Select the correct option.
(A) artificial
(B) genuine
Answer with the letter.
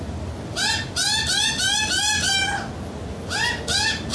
B